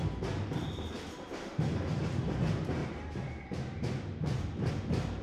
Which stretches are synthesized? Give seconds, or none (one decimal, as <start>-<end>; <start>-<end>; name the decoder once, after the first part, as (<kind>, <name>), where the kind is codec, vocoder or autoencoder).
0.6-2.0 (vocoder, BigVGAN v2); 2.8-4.7